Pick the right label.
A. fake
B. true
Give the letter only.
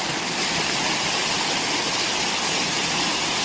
B